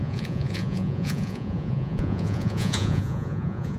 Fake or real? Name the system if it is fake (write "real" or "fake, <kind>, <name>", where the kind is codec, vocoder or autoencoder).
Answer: fake, vocoder, Vocos